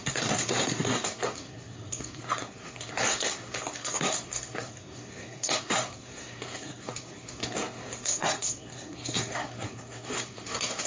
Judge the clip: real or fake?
fake